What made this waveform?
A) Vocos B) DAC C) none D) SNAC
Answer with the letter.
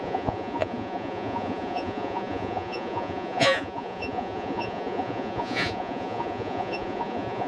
A